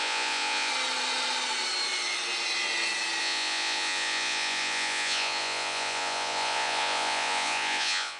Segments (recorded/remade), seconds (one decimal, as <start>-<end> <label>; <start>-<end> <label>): 0.0-0.7 remade; 0.7-3.2 recorded; 3.2-8.2 remade